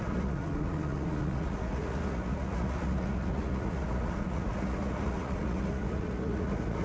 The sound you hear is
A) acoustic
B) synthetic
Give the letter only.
B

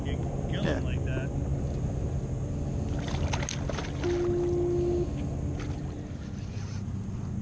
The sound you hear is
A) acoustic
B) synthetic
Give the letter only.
A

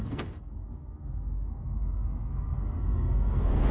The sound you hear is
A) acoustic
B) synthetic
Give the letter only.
B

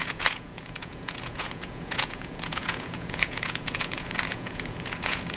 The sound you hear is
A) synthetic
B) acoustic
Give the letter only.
A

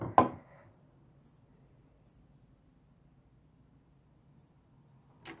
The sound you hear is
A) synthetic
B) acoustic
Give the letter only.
B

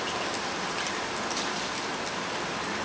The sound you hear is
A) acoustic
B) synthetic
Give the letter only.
A